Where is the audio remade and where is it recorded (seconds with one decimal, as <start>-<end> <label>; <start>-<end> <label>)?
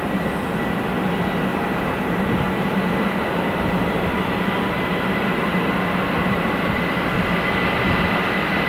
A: 0.0-1.5 recorded; 1.5-4.5 remade; 4.5-8.7 recorded